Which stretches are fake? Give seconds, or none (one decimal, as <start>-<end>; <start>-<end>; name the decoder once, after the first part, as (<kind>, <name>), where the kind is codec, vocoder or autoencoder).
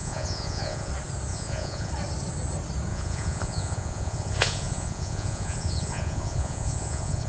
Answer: 0.0-0.9 (vocoder, Vocos); 1.3-1.9; 2.9-7.3